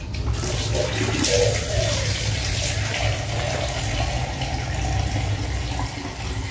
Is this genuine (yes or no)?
yes